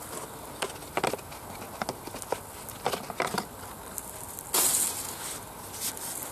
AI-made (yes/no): no